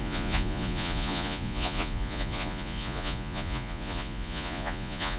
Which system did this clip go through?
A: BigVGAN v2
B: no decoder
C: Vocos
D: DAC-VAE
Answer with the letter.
C